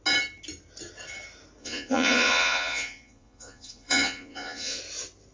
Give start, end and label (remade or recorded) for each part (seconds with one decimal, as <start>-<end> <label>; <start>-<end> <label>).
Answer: 0.0-1.6 recorded; 1.6-4.8 remade; 4.8-5.3 recorded